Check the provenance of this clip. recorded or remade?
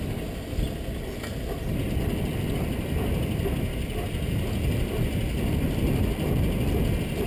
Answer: recorded